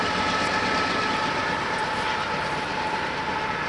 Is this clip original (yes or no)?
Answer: yes